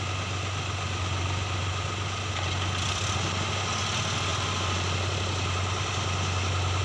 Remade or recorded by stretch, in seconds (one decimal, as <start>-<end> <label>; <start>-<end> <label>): 0.0-6.8 recorded